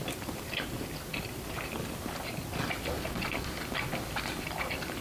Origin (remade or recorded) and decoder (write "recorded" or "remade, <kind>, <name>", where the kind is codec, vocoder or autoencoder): recorded